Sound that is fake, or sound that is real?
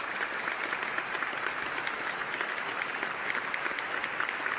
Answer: real